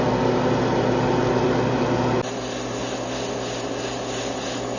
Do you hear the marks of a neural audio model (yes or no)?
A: no